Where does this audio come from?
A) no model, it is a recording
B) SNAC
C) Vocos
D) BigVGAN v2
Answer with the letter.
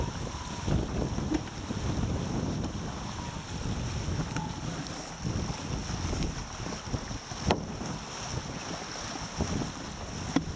A